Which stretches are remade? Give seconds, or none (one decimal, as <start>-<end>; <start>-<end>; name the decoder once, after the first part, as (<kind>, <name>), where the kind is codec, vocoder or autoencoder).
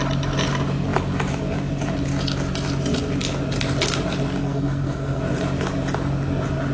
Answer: 4.4-5.2 (codec, SNAC)